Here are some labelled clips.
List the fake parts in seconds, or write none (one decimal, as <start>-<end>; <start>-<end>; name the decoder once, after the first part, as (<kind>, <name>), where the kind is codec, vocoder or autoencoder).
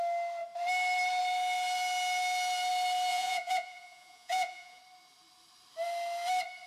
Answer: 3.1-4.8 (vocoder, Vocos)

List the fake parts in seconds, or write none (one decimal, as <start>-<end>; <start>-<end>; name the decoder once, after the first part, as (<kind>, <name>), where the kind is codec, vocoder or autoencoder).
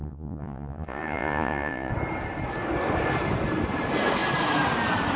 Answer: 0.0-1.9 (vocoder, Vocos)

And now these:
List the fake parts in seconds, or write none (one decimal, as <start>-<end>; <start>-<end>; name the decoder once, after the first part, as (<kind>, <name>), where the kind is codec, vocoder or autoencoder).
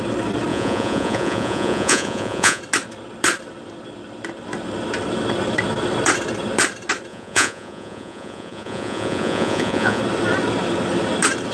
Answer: 0.5-2.6 (vocoder, Vocos); 7.1-10.0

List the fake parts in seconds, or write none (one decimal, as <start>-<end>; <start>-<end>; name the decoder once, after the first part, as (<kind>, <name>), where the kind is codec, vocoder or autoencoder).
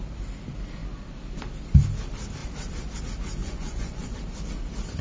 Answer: 3.4-4.1 (vocoder, Vocos)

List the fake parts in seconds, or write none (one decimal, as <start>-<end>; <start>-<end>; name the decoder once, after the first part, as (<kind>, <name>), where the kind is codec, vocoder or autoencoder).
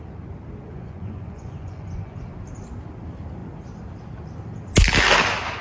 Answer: 0.6-2.2 (vocoder, Vocos)